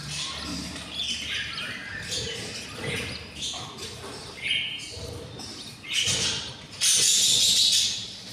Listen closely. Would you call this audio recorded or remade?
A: recorded